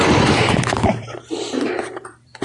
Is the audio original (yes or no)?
no